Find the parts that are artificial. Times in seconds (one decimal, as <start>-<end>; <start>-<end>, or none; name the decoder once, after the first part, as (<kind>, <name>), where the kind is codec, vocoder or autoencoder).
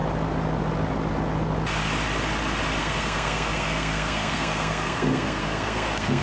2.8-6.2 (codec, SNAC)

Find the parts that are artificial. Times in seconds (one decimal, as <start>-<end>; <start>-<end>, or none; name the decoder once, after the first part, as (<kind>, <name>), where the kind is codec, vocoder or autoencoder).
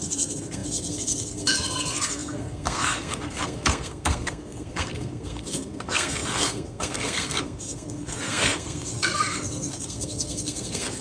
0.0-11.0 (codec, SNAC)